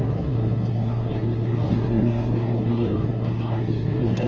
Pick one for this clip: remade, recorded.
remade